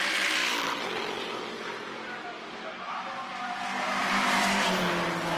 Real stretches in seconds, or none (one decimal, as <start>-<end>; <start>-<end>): 0.0-0.4; 3.4-4.0; 4.6-5.4